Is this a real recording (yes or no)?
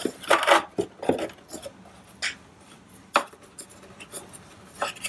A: yes